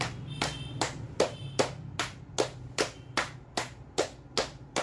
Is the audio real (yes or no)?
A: yes